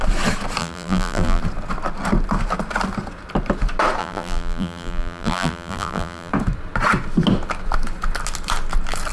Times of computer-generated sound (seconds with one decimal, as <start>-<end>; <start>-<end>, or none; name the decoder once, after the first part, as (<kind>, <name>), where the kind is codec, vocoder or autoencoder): 0.6-1.4 (vocoder, BigVGAN v2); 4.0-6.3